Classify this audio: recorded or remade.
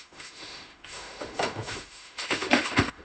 remade